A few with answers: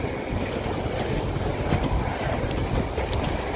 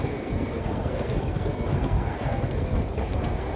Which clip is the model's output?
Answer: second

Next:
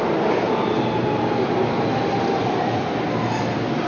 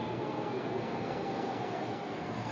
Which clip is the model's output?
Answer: second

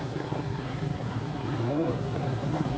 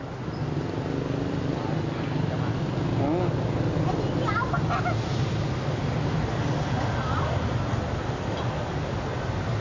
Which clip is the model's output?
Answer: first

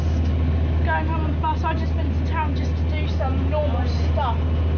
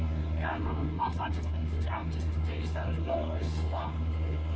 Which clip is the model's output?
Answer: second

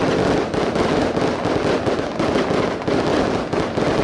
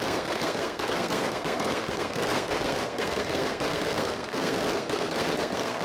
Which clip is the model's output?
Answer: second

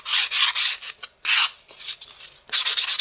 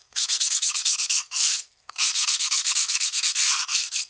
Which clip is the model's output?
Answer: second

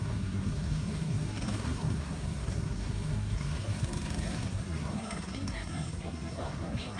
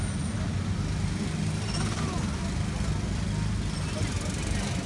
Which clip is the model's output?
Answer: first